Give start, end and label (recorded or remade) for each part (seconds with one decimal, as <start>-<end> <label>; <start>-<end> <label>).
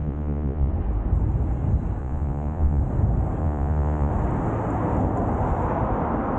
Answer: 0.0-0.7 remade; 0.7-2.0 recorded; 2.0-2.8 remade; 2.8-3.4 recorded; 3.4-4.1 remade; 4.1-6.4 recorded